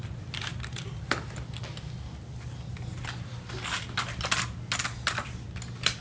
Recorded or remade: recorded